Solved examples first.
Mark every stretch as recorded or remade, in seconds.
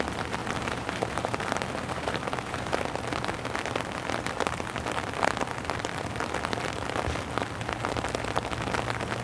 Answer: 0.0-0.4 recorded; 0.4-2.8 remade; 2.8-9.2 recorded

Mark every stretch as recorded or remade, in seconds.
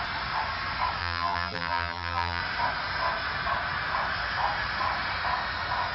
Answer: 0.0-1.0 recorded; 1.0-2.4 remade; 2.4-5.9 recorded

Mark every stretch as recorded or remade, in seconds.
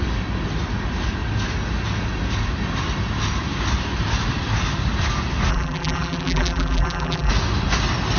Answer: 0.0-5.5 recorded; 5.5-7.3 remade; 7.3-8.2 recorded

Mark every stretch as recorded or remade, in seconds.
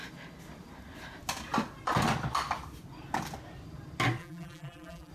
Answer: 0.0-4.2 recorded; 4.2-5.1 remade